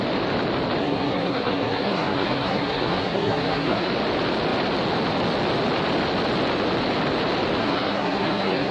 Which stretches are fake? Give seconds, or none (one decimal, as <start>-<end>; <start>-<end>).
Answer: 0.8-3.9; 7.6-8.7